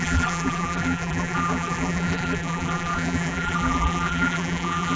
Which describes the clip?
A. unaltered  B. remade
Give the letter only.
B